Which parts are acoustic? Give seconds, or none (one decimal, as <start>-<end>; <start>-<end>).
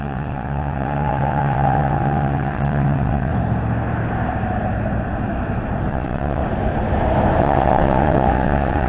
3.3-5.9; 6.4-7.4